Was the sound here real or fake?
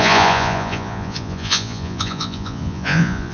fake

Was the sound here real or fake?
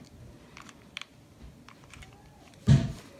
real